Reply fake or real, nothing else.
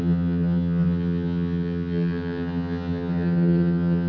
fake